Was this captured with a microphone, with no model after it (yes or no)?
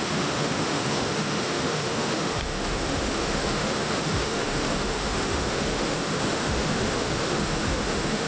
no